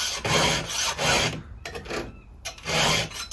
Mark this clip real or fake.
real